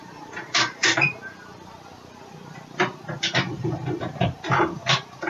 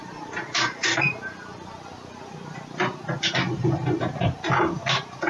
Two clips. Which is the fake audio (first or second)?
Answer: first